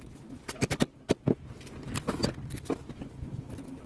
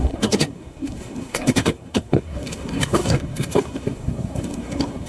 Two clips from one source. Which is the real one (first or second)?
first